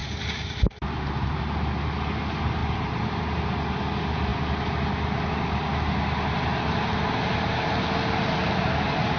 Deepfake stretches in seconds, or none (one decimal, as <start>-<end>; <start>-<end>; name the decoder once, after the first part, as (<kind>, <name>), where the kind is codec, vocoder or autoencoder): 0.0-1.4 (vocoder, BigVGAN v2); 2.6-3.2